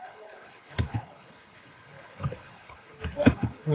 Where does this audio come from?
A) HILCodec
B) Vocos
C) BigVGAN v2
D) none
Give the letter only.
A